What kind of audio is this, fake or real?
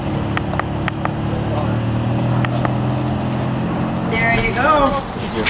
real